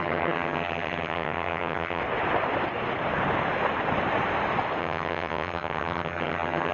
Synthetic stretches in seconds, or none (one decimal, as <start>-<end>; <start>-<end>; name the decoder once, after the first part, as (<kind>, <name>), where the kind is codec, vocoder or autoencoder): 0.0-2.0 (vocoder, HiFi-GAN); 4.8-6.7